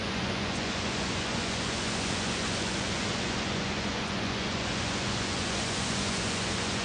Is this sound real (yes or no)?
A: no